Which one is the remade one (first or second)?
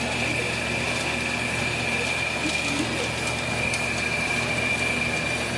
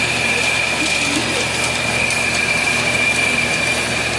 second